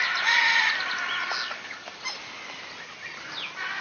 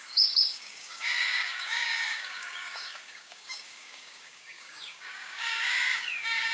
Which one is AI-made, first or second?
second